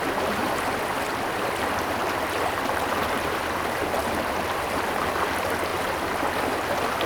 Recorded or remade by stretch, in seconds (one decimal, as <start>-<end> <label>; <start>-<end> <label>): 0.0-7.1 recorded